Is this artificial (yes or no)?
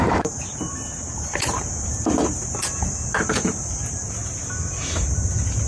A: yes